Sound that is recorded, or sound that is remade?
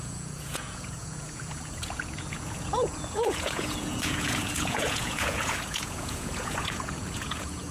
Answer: remade